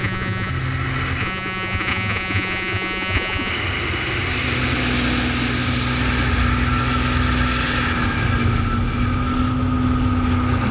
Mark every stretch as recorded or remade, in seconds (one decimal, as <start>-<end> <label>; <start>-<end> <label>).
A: 0.0-0.5 remade; 0.5-1.2 recorded; 1.2-3.5 remade; 3.5-10.7 recorded